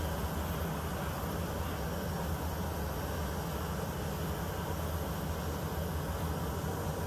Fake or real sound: real